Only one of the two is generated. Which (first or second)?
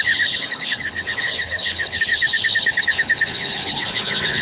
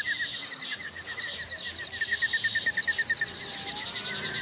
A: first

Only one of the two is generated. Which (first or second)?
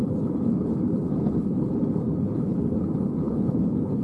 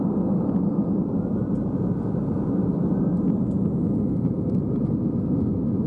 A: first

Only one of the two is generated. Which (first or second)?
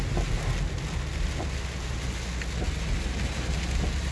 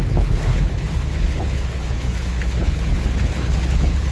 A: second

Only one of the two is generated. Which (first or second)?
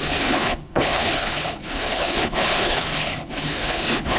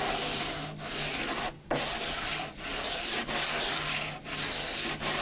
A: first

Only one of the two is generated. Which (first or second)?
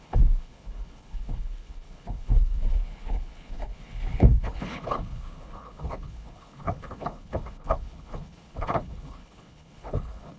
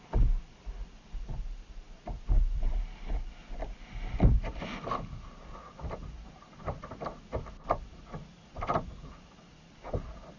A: first